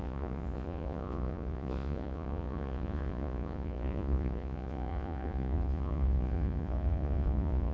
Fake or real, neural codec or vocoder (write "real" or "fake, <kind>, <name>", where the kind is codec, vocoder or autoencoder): fake, vocoder, Vocos